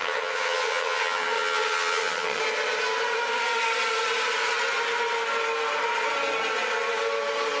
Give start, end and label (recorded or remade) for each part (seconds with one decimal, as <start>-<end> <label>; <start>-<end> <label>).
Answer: 0.0-2.4 remade; 2.4-7.6 recorded